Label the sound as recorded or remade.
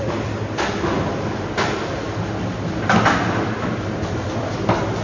recorded